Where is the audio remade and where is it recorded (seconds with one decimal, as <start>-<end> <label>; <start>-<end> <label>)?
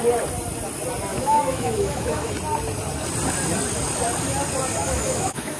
0.0-1.1 recorded; 1.1-2.3 remade; 2.3-4.8 recorded; 4.8-5.6 remade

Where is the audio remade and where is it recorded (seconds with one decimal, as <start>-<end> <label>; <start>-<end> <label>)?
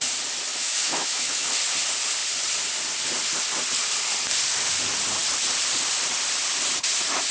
0.0-0.5 recorded; 0.5-1.5 remade; 1.5-7.3 recorded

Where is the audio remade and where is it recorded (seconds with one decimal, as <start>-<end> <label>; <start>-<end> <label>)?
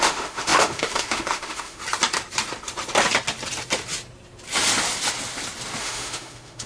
0.0-1.8 remade; 1.8-5.8 recorded; 5.8-6.7 remade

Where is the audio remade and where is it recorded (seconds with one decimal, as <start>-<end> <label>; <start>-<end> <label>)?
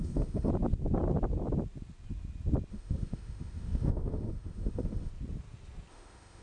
0.0-0.5 remade; 0.5-2.7 recorded; 2.7-5.1 remade; 5.1-5.9 recorded; 5.9-6.4 remade